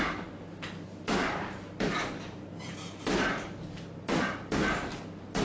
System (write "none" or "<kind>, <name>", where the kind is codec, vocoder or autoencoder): none